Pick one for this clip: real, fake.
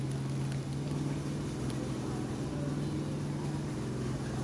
real